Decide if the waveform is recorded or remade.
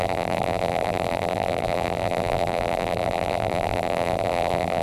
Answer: remade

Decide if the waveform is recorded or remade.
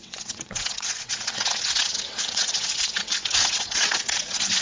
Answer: remade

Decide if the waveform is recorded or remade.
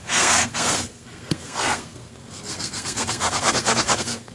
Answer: remade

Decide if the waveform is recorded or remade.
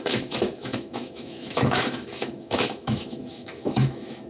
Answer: remade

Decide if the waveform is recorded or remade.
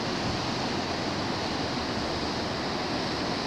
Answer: recorded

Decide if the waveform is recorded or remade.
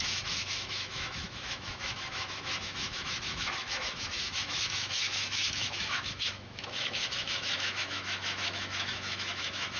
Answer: remade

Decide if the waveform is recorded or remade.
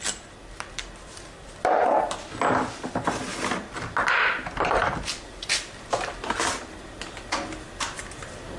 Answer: recorded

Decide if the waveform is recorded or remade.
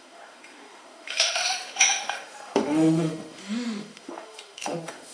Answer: remade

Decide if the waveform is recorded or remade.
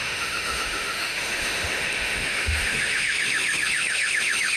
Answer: remade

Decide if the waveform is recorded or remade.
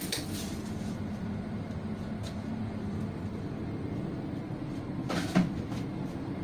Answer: recorded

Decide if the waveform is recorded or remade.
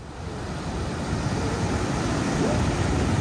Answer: recorded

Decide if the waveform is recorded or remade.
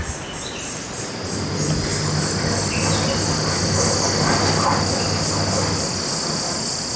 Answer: recorded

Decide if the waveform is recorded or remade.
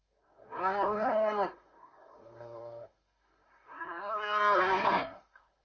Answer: remade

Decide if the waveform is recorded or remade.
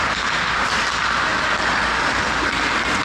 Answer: recorded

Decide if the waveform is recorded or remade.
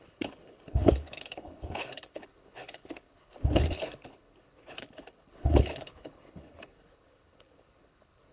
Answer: remade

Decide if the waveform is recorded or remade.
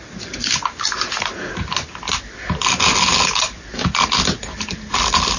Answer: recorded